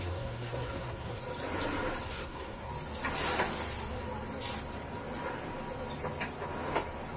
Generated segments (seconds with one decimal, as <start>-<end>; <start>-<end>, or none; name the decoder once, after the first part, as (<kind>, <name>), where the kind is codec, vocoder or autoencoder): 0.0-1.2 (codec, SNAC); 2.1-2.7